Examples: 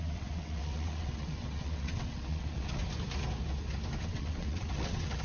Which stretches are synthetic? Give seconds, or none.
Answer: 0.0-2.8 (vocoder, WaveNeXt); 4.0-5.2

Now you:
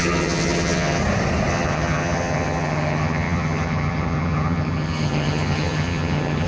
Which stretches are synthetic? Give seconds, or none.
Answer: 0.0-1.0 (vocoder, HiFi-GAN); 1.5-6.5

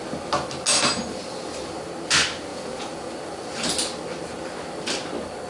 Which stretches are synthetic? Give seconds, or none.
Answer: 2.5-3.1 (vocoder, Vocos)